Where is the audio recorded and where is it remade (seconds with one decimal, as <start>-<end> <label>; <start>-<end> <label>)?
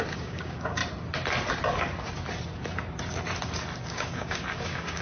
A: 0.0-0.8 remade; 0.8-3.8 recorded; 3.8-5.0 remade